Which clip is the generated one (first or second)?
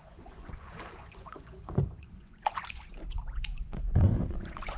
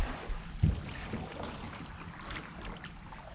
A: first